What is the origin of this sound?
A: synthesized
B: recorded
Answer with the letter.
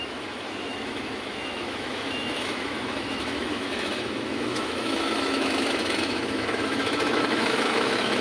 A